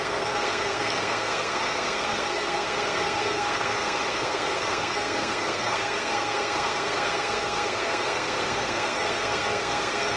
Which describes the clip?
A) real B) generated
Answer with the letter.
B